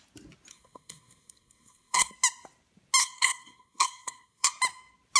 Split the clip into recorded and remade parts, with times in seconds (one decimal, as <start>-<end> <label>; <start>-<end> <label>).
0.0-0.5 recorded; 0.5-2.1 remade; 2.1-3.0 recorded; 3.0-4.5 remade; 4.5-5.2 recorded